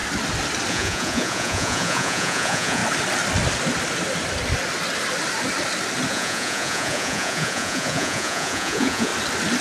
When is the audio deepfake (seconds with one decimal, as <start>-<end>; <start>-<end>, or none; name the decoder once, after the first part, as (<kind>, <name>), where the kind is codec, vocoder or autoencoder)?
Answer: 0.7-2.8 (vocoder, Vocos); 6.1-9.1